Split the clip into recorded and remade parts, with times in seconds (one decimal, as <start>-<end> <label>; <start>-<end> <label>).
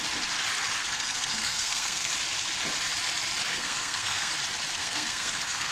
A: 0.0-0.8 recorded; 0.8-2.1 remade; 2.1-3.5 recorded; 3.5-4.3 remade; 4.3-4.8 recorded; 4.8-5.7 remade